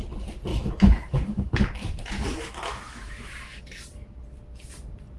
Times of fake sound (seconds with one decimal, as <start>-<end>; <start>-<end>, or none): 0.5-3.6